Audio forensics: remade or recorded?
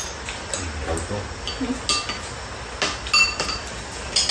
recorded